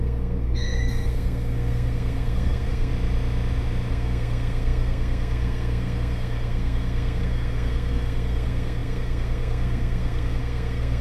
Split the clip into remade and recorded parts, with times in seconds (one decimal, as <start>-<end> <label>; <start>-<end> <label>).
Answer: 0.0-2.9 remade; 2.9-3.9 recorded; 3.9-11.0 remade